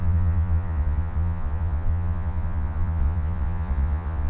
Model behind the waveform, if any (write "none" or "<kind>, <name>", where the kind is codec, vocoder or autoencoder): vocoder, Vocos